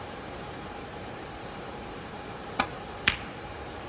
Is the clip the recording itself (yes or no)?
no